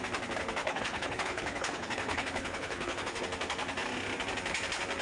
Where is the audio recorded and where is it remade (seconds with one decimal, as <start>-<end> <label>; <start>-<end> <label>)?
0.0-0.6 recorded; 0.6-3.2 remade; 3.2-5.0 recorded